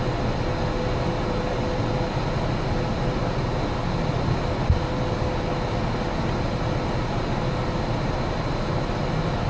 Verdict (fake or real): real